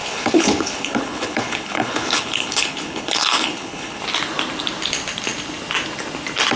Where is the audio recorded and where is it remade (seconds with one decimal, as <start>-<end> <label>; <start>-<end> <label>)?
0.0-4.0 remade; 4.0-6.6 recorded